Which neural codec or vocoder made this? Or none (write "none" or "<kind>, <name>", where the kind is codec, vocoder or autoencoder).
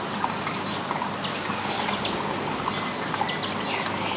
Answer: none